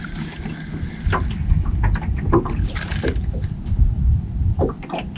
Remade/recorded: recorded